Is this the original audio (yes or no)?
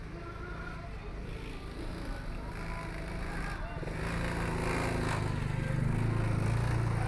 yes